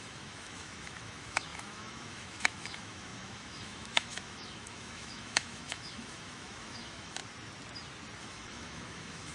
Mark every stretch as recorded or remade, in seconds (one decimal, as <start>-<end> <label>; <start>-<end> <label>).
0.0-7.2 remade; 7.2-8.2 recorded; 8.2-9.3 remade